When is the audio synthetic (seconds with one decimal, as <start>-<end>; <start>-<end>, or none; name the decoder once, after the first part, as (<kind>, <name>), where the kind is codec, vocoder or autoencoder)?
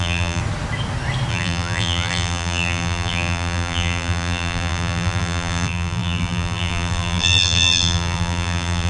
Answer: 0.0-0.4 (vocoder, BigVGAN v2); 1.3-8.9